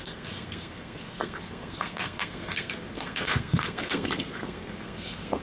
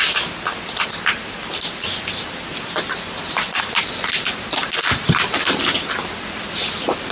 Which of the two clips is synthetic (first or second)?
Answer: first